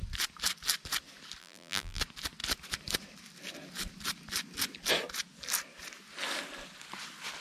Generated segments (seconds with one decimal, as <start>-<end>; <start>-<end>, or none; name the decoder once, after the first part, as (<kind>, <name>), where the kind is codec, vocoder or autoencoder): 1.4-2.0 (vocoder, BigVGAN v2)